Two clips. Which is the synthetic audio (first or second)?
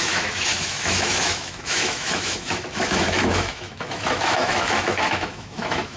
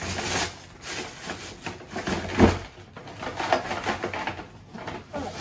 first